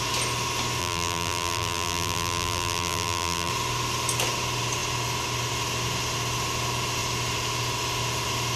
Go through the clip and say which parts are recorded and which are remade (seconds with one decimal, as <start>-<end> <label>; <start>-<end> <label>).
0.0-0.8 recorded; 0.8-3.5 remade; 3.5-8.6 recorded